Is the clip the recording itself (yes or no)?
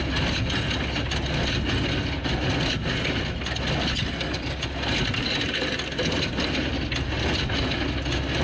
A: yes